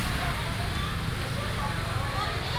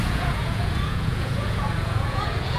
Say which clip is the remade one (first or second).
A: second